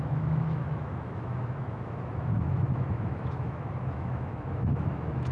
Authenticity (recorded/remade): remade